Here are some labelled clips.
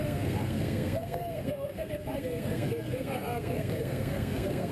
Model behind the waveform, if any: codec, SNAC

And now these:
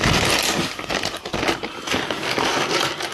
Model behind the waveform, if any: none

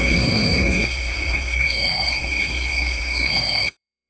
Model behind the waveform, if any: codec, SNAC